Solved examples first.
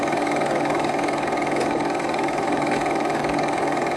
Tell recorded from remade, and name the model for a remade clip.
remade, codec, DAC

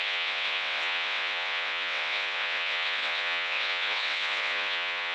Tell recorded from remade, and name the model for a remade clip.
remade, vocoder, WaveNeXt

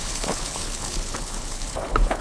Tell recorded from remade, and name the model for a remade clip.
remade, codec, HILCodec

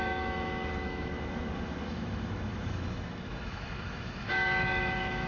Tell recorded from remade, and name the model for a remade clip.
remade, autoencoder, DAC-VAE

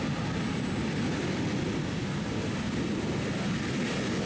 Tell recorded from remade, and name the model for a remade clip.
recorded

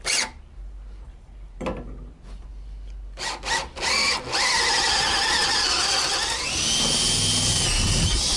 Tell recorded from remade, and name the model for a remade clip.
recorded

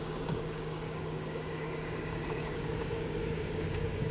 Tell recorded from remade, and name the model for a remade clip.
remade, codec, DAC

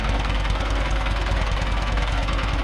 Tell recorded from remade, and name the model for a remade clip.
remade, codec, SNAC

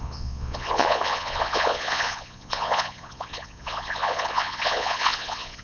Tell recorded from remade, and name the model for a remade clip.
remade, vocoder, Vocos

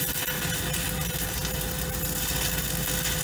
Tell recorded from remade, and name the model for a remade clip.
recorded